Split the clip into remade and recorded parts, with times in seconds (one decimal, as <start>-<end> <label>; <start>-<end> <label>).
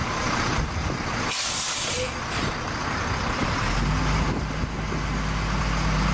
0.0-0.6 remade; 0.6-6.1 recorded